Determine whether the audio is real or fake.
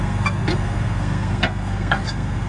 fake